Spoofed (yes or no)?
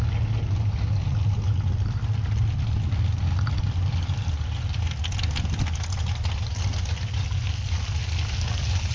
no